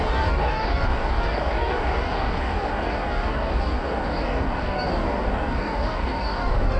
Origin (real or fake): fake